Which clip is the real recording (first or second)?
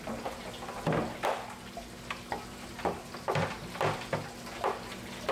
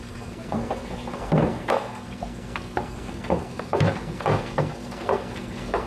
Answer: first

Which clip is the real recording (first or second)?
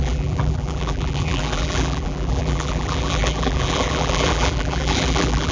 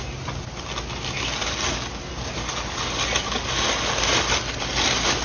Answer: second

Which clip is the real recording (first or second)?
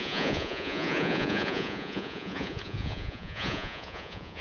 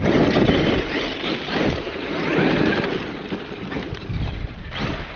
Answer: second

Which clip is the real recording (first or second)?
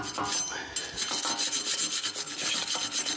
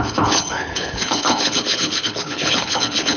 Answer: first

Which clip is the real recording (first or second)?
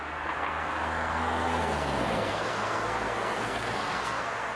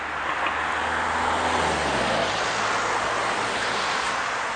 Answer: second